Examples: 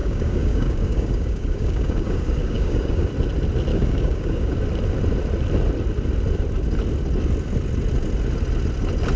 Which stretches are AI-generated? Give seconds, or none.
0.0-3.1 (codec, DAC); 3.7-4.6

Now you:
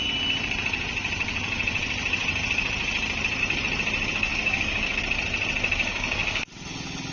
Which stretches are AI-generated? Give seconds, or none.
4.3-5.0 (codec, DAC); 5.9-6.5

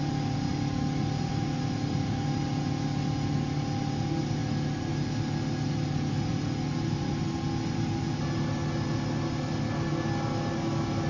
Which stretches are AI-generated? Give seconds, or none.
none

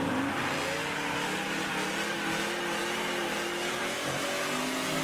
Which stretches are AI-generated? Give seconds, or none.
0.8-1.7 (codec, DAC)

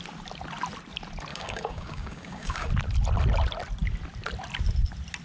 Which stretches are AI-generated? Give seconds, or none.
1.3-2.7 (codec, DAC)

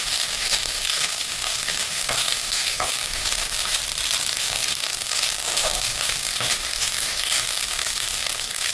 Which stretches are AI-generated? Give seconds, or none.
0.0-3.8 (codec, DAC); 4.4-8.7